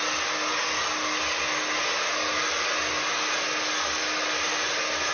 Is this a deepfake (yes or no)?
no